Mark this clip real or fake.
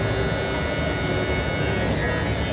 real